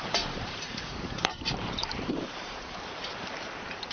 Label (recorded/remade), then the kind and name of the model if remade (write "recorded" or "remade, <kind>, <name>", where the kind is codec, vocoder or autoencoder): remade, vocoder, BigVGAN v2